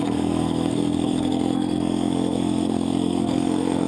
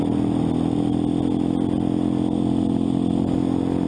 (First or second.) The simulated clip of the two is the first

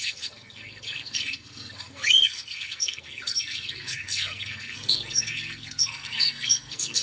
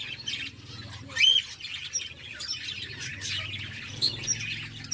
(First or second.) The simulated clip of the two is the first